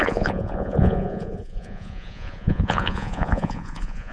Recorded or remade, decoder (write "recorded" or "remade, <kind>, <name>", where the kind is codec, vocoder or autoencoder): remade, vocoder, Vocos